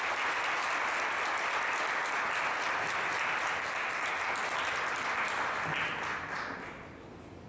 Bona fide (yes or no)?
yes